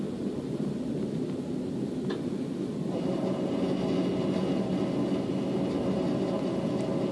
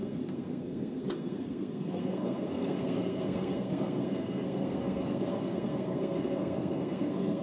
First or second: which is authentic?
first